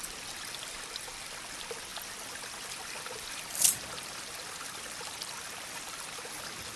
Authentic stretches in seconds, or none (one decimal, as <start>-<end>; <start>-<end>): 0.0-1.9; 6.0-6.8